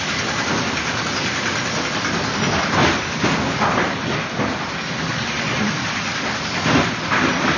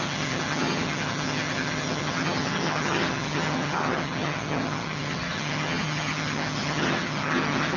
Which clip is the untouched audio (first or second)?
first